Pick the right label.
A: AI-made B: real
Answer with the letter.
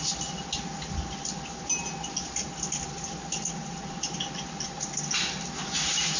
B